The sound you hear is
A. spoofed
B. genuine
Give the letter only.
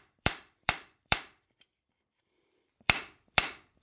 A